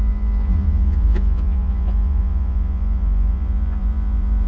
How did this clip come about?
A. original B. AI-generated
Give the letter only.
B